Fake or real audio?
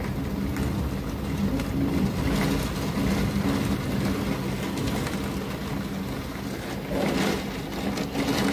real